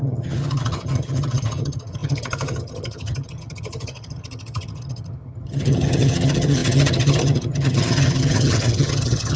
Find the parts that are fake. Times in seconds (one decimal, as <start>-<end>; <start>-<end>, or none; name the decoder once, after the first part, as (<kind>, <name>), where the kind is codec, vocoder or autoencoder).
0.0-9.4 (vocoder, HiFi-GAN)